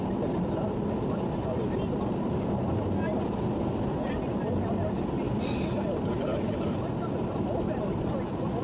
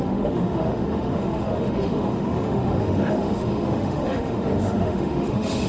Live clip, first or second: first